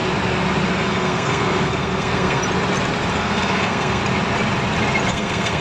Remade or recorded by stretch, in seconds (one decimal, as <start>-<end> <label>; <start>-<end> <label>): 0.0-0.7 recorded; 0.7-2.4 remade; 2.4-3.1 recorded; 3.1-4.0 remade; 4.0-5.1 recorded; 5.1-5.6 remade

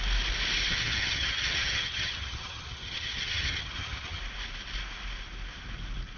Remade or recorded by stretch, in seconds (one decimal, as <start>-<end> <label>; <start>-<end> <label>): 0.0-0.7 recorded; 0.7-4.2 remade; 4.2-6.2 recorded